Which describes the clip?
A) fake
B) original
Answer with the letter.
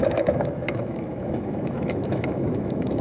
A